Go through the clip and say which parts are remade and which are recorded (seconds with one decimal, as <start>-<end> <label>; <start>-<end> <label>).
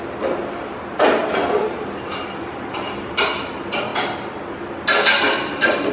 0.0-3.9 remade; 3.9-5.4 recorded; 5.4-5.9 remade